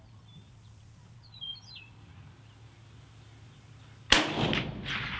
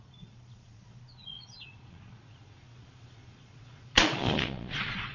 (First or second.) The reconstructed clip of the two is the second